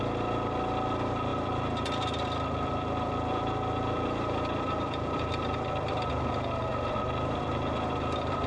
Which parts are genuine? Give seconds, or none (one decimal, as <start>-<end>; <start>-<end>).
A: 0.0-1.3; 6.1-6.7